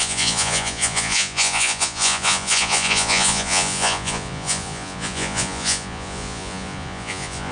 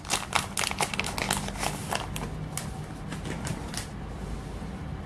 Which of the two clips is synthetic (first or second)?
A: first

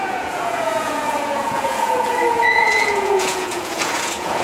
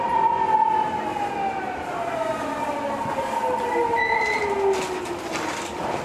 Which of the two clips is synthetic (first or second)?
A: first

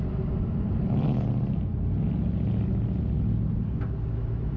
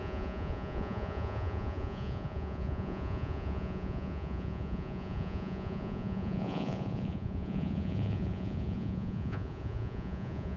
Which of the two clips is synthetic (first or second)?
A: second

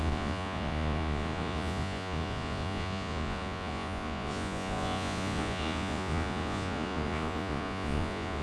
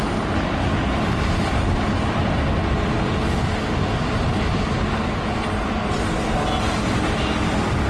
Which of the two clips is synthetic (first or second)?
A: first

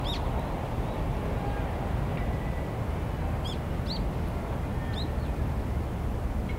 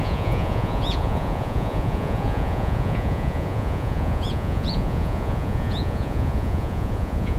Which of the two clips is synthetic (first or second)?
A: second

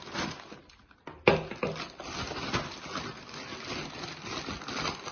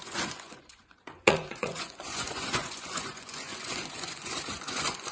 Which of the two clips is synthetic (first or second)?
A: second